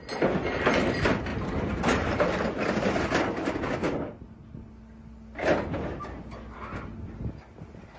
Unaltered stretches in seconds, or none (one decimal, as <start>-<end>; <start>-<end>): 0.0-8.0